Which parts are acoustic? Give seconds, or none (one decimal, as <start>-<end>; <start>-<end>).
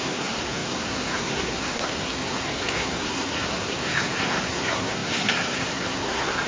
none